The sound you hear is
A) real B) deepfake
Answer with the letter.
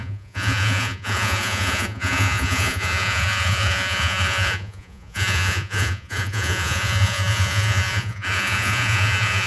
B